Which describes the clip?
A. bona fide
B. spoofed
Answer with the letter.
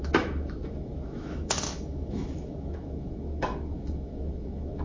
B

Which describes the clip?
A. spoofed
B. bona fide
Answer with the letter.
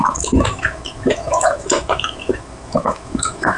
A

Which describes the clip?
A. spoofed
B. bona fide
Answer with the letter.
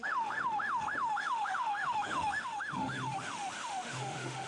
A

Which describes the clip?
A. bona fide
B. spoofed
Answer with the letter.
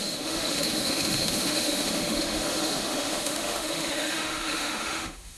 B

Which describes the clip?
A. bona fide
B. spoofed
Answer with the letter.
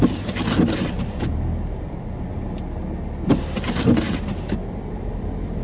A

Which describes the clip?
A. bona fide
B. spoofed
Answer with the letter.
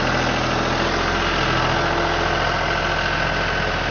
A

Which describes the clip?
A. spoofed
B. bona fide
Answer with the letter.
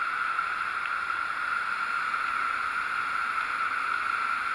B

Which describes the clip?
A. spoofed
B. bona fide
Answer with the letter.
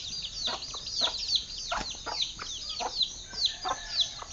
B